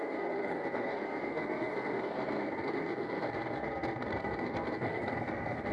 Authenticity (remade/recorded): remade